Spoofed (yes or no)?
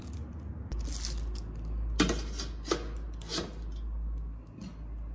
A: no